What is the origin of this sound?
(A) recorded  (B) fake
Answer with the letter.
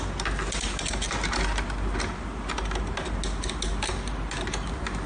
A